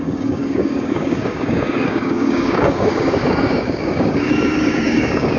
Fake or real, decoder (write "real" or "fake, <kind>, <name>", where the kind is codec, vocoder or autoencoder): fake, codec, DAC